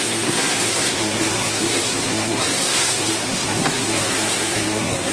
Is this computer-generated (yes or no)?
yes